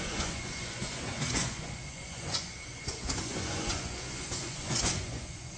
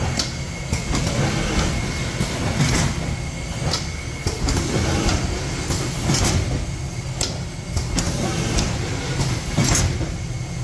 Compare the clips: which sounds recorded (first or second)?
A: second